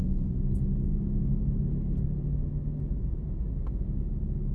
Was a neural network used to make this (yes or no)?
no